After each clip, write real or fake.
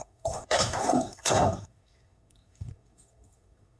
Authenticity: fake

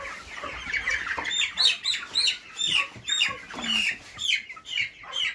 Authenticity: real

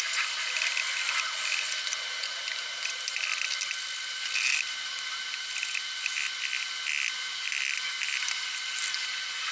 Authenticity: real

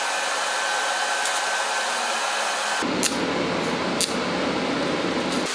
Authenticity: real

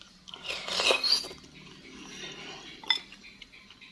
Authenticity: real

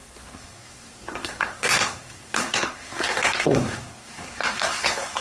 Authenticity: fake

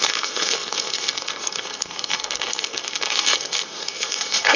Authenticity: fake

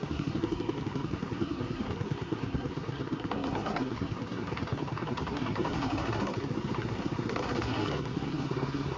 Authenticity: fake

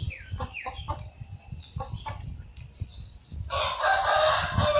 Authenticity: real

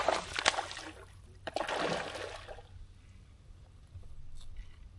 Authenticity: real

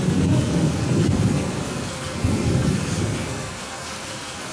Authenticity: fake